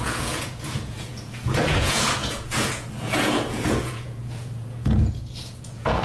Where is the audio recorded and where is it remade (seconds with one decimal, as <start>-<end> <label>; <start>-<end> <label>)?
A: 0.0-6.0 remade